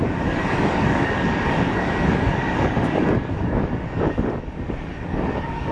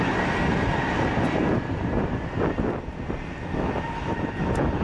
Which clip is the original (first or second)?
second